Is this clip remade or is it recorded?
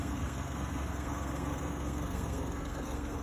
remade